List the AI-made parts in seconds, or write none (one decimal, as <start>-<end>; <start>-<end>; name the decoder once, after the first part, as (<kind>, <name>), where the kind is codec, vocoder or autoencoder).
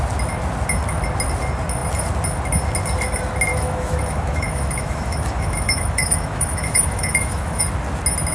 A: 3.5-7.6 (autoencoder, DAC-VAE)